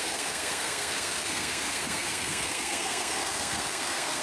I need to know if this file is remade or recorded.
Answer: remade